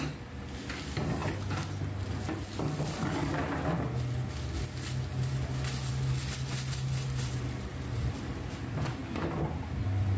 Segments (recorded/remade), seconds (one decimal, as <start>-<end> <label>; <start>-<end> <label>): 0.0-7.7 recorded; 7.7-8.3 remade; 8.3-10.2 recorded

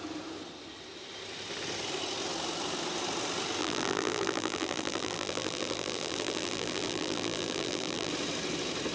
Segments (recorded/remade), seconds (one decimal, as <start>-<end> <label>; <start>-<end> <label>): 0.0-3.6 recorded; 3.6-8.1 remade; 8.1-8.9 recorded

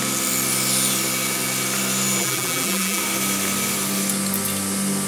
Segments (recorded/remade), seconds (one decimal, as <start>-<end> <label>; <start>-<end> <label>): 0.0-2.2 recorded; 2.2-3.0 remade; 3.0-5.1 recorded

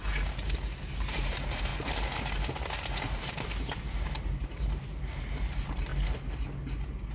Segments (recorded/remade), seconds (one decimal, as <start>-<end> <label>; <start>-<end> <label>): 0.0-1.7 remade; 1.7-3.2 recorded; 3.2-5.9 remade; 5.9-7.1 recorded

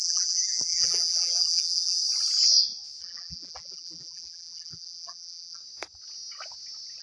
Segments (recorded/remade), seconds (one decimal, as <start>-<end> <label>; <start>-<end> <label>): 0.0-2.0 remade; 2.0-3.0 recorded; 3.0-5.6 remade; 5.6-7.0 recorded

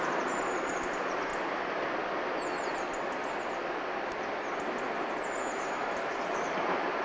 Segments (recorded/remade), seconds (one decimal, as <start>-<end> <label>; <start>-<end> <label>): 0.0-1.3 remade; 1.3-5.4 recorded; 5.4-7.0 remade

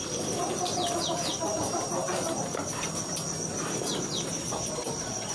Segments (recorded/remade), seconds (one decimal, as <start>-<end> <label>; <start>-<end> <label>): 0.0-0.6 remade; 0.6-1.4 recorded; 1.4-2.0 remade; 2.0-5.3 recorded